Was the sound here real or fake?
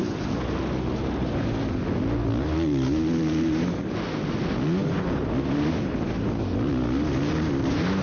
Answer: real